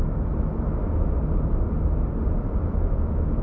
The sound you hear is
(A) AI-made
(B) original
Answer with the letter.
B